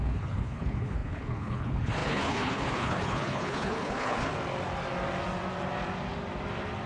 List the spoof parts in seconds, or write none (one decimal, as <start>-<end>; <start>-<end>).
0.0-4.3